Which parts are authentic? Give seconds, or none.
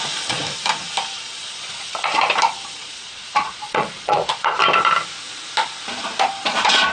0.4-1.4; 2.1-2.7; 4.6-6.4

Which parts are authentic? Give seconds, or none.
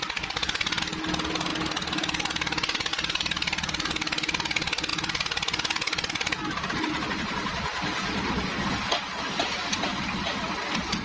0.0-11.0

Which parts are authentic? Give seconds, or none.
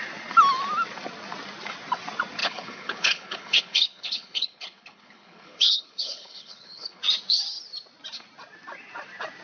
0.0-2.4; 7.0-9.4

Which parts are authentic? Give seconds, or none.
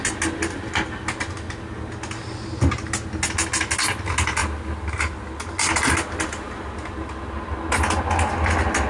0.0-8.9